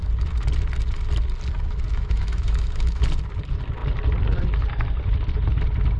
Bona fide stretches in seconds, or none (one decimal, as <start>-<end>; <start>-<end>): 0.0-1.9; 3.0-6.0